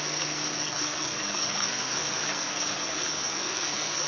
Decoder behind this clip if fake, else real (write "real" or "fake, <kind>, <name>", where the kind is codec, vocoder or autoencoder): fake, codec, SNAC